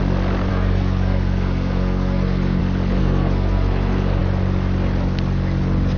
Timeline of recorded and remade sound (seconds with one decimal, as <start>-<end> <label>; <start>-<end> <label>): 0.0-0.5 recorded; 0.5-2.6 remade; 2.6-3.0 recorded; 3.0-4.2 remade; 4.2-6.0 recorded